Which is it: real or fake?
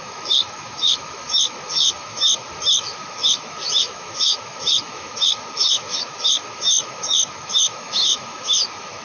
fake